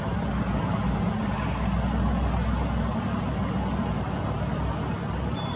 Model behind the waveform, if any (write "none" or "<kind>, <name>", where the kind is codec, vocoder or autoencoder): none